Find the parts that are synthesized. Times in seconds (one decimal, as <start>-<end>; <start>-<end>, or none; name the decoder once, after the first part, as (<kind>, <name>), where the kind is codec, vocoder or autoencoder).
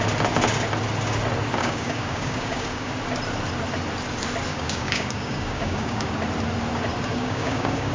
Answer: 1.6-2.9 (codec, DAC); 4.5-6.1; 7.1-7.9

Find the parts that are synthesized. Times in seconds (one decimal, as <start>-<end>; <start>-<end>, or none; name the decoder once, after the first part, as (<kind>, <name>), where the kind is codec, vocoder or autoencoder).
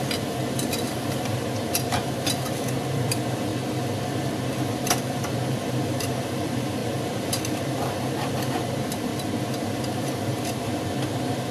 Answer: 0.0-3.5 (vocoder, BigVGAN v2); 4.5-9.1; 9.6-11.5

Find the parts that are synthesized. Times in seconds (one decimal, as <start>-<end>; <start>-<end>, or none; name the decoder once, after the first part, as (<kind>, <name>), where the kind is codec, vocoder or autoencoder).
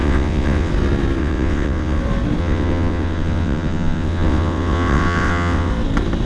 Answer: 0.0-0.7 (vocoder, WaveNeXt); 1.2-2.0; 2.4-5.7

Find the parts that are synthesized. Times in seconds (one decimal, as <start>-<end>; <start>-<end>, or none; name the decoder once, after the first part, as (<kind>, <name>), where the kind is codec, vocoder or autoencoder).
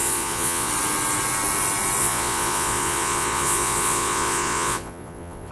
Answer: 0.0-0.7 (vocoder, Vocos); 2.0-5.5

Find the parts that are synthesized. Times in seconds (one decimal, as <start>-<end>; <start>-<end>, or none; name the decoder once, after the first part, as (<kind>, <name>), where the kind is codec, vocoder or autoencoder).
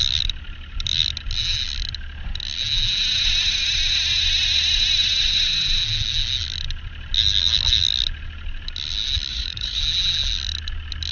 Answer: 9.3-9.8 (vocoder, Vocos)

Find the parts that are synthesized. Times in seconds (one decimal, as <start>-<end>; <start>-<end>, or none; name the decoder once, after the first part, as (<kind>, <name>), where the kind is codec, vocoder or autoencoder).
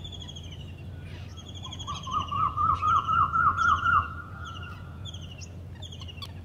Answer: 1.3-5.1 (vocoder, Vocos)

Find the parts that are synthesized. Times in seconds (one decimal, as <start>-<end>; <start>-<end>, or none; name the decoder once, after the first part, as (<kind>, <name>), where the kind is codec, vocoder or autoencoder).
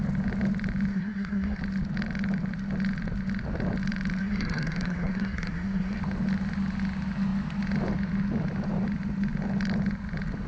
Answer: 0.9-1.6 (codec, SNAC); 4.2-6.0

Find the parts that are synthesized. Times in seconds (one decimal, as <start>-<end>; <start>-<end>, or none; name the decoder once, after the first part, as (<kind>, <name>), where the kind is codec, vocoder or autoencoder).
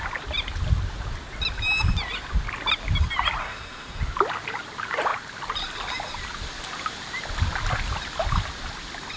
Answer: 3.4-4.0 (codec, SNAC)